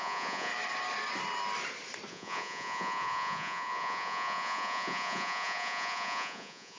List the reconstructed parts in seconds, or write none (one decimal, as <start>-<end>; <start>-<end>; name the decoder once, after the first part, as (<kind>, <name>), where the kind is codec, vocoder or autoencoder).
0.0-0.5 (vocoder, Vocos); 2.1-6.8